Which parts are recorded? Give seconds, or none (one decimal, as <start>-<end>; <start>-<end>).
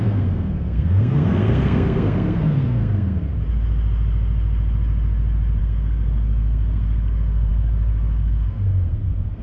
3.3-5.6